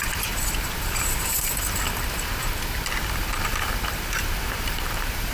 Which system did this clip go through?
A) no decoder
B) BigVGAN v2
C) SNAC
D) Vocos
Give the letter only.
B